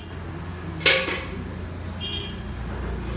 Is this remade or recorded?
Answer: recorded